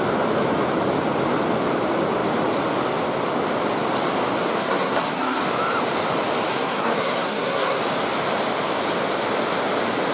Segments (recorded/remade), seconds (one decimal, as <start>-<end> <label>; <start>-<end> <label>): 0.0-4.6 recorded; 4.6-5.4 remade; 5.4-6.5 recorded; 6.5-7.8 remade; 7.8-10.1 recorded